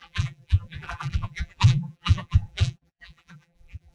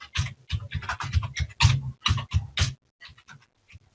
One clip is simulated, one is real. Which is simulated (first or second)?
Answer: first